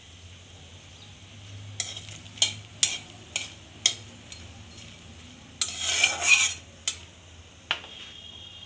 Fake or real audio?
real